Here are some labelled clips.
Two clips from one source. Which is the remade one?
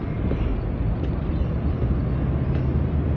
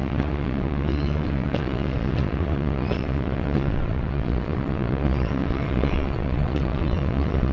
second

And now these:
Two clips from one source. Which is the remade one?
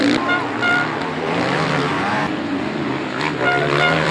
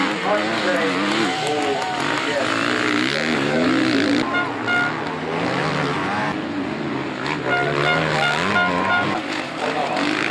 first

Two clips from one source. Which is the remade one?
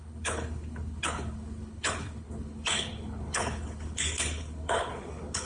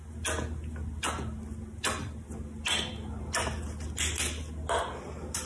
first